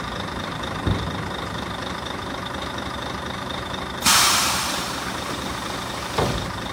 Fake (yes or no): yes